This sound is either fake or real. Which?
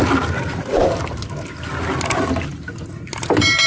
real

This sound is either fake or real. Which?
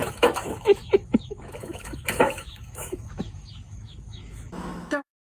fake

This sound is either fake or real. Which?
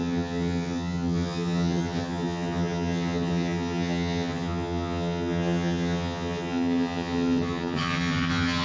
fake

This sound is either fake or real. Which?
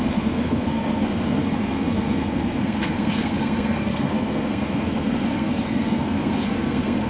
fake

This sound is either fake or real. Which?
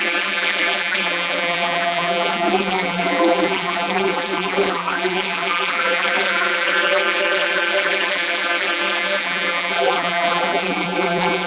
fake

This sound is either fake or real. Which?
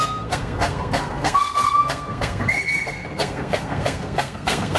fake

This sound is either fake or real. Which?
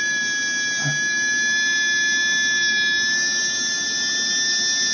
real